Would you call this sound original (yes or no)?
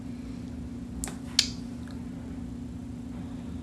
yes